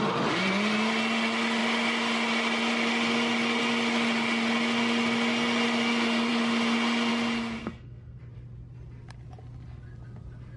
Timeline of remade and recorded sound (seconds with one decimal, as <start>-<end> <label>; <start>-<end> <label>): 0.0-7.6 recorded; 7.6-8.2 remade; 8.2-10.6 recorded